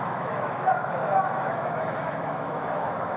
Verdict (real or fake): fake